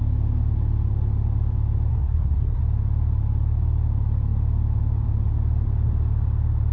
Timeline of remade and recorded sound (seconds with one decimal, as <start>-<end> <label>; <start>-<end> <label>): 0.0-1.9 recorded; 1.9-2.6 remade; 2.6-6.7 recorded